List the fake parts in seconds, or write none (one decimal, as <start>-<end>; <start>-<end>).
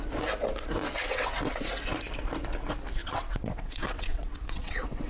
0.8-1.7; 3.0-5.1